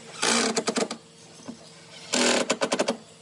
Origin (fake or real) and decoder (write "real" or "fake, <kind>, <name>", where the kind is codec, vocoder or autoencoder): real